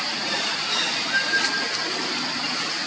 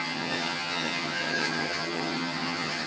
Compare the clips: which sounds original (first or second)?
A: first